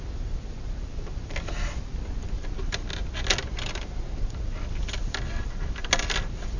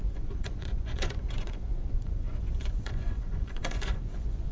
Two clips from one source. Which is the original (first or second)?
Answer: first